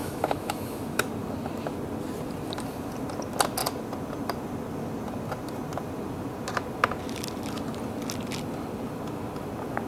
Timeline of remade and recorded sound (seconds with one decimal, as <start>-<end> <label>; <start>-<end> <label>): 0.0-1.1 remade; 1.1-9.9 recorded